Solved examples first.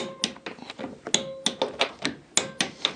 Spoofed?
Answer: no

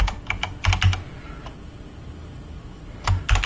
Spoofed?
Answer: no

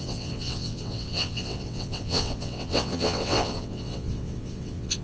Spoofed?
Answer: yes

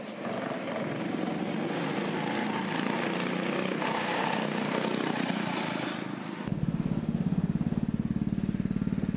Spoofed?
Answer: no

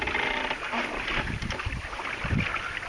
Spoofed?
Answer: no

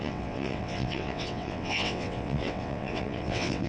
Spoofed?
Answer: yes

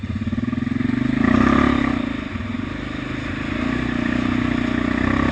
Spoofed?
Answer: no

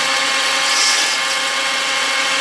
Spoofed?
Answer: yes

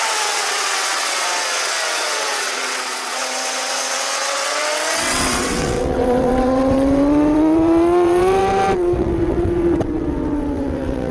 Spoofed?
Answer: yes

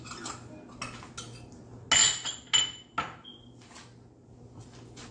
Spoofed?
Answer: no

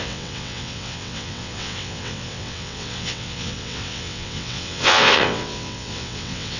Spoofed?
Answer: yes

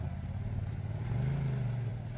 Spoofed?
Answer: no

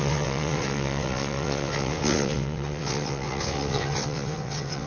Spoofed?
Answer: yes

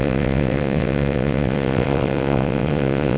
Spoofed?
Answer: yes